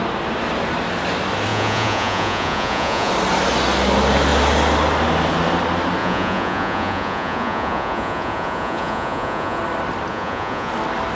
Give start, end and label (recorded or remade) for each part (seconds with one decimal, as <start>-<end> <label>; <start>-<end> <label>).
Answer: 0.0-1.5 recorded; 1.5-3.1 remade; 3.1-6.0 recorded; 6.0-9.6 remade; 9.6-10.1 recorded; 10.1-10.7 remade; 10.7-11.1 recorded